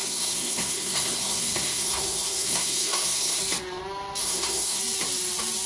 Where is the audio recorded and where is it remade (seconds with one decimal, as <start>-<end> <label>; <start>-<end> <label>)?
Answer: 0.0-3.4 remade; 3.4-4.2 recorded; 4.2-4.8 remade; 4.8-5.7 recorded